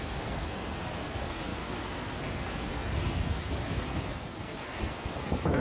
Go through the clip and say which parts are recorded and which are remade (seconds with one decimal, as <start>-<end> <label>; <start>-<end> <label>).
0.0-5.6 remade